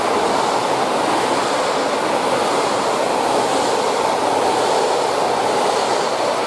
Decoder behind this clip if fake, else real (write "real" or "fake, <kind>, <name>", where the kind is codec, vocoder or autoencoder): real